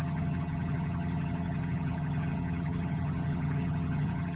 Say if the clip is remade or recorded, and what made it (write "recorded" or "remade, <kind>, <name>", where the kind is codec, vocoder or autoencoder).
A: remade, vocoder, HiFi-GAN